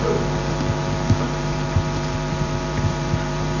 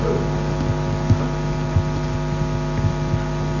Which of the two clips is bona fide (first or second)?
second